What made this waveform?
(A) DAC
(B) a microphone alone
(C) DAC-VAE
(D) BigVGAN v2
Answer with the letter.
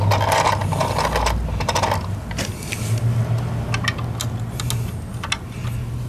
B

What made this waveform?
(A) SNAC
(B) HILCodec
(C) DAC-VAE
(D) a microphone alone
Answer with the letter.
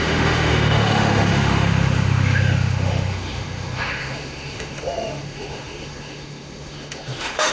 C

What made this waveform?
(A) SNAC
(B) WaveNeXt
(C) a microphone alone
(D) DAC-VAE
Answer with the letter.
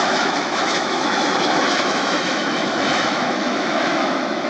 D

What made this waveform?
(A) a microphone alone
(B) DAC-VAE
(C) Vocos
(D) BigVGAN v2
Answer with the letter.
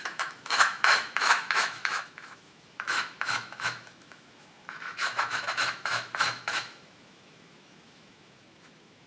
B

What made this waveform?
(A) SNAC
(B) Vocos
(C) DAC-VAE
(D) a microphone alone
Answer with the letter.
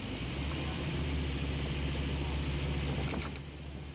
D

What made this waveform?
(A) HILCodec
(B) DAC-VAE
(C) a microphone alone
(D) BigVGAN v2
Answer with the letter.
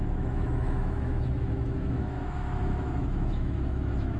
B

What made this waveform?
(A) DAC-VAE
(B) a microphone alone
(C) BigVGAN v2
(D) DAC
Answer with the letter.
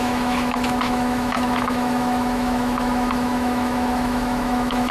A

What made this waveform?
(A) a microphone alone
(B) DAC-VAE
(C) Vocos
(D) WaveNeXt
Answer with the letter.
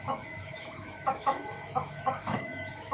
B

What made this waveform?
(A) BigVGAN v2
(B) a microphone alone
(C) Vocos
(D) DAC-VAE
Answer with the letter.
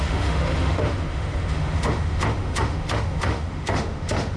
D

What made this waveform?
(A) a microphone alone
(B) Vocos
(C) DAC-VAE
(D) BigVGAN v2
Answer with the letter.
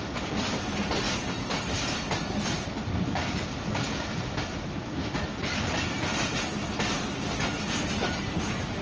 A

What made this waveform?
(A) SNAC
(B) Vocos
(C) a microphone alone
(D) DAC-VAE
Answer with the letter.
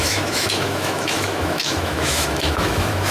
D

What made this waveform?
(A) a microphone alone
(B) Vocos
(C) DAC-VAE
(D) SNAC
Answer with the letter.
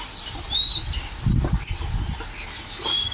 A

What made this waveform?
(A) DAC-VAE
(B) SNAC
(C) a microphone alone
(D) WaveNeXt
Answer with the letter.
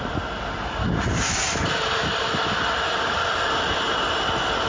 C